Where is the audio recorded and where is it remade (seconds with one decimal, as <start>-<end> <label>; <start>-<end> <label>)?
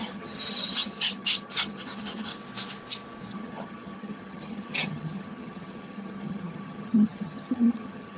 0.0-2.3 remade; 2.3-3.3 recorded; 3.3-8.2 remade